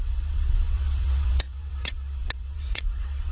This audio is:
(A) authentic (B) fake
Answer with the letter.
B